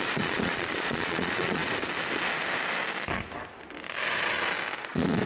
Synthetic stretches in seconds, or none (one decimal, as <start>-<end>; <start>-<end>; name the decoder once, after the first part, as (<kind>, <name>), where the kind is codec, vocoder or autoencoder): 0.0-1.6 (vocoder, Vocos); 4.8-5.3